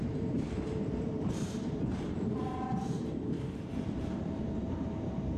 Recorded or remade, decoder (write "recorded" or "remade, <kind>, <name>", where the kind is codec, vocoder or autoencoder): remade, vocoder, BigVGAN v2